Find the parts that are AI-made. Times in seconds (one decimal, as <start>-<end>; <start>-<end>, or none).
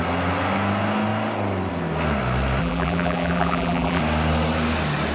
2.6-4.0